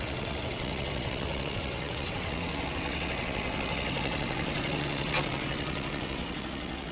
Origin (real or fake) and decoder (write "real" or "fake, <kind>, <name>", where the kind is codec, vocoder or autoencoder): fake, vocoder, WaveNeXt